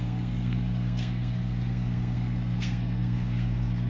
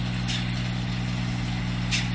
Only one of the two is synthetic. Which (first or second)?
first